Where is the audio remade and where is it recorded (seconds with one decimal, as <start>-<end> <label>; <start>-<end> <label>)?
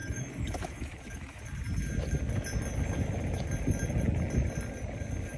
0.0-1.4 remade; 1.4-5.4 recorded